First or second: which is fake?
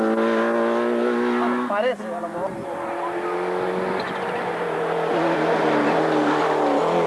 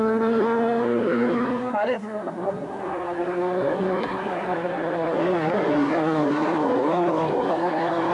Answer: second